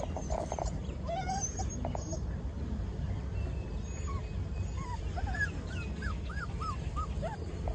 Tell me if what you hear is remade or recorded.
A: recorded